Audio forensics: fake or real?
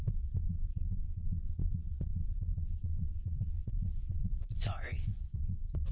fake